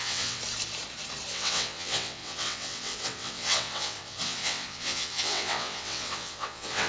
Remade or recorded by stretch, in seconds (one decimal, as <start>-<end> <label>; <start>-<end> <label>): 0.0-0.4 remade; 0.4-1.3 recorded; 1.3-6.9 remade